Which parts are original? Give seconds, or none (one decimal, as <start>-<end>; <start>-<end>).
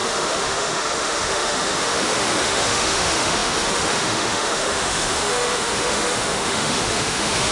none